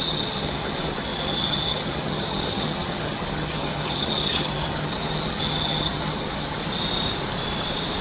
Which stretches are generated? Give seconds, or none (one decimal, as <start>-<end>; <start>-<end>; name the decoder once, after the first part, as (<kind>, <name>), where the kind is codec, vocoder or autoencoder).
0.0-6.6 (vocoder, HiFi-GAN)